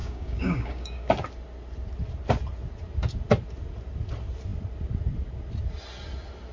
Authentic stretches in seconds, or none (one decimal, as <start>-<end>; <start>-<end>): 1.1-6.5